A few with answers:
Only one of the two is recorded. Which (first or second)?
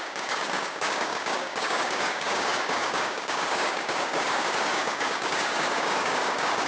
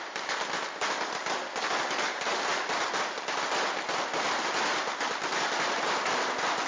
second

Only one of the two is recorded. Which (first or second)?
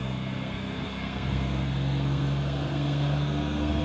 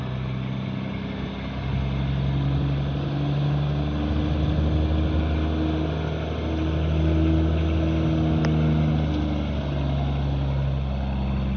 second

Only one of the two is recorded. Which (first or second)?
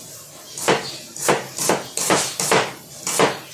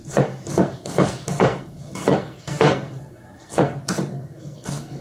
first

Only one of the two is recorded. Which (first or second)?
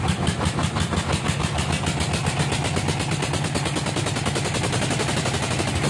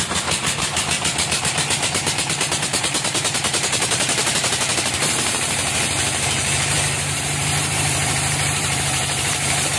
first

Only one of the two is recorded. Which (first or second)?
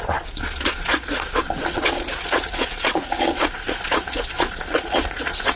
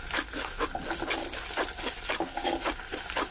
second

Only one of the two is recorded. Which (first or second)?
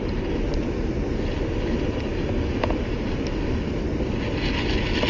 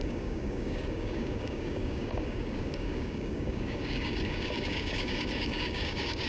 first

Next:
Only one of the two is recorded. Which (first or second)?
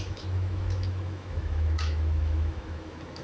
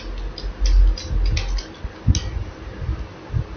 second